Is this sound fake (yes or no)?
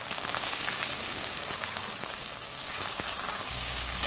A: yes